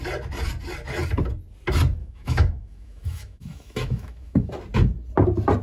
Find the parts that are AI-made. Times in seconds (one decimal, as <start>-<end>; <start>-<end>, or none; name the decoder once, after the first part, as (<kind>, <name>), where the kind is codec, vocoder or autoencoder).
2.0-4.5 (autoencoder, DAC-VAE)